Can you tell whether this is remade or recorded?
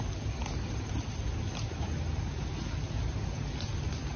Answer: recorded